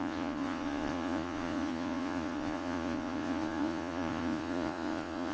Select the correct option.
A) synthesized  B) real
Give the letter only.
A